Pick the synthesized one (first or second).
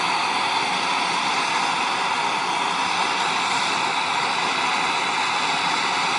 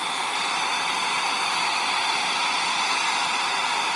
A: second